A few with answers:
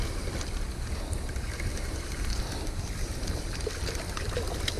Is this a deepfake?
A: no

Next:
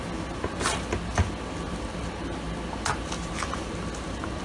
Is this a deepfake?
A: no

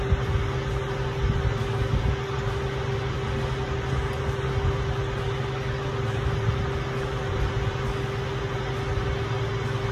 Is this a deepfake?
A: no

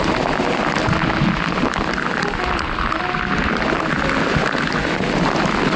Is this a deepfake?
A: no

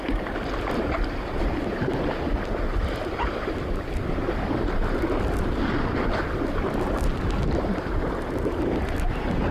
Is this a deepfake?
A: no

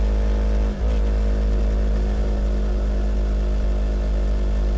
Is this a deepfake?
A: no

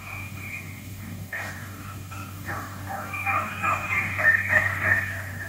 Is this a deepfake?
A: yes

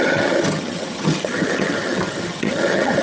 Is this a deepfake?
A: yes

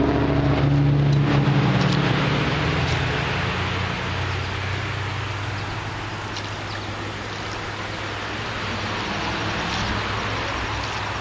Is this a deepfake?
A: no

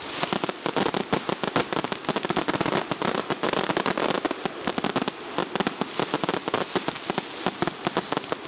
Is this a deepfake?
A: no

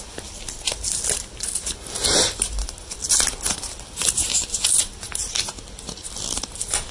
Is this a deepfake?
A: no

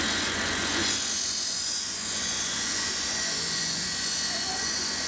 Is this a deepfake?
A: yes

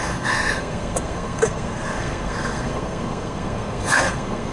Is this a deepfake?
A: yes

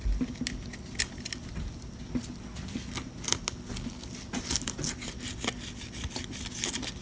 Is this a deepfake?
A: no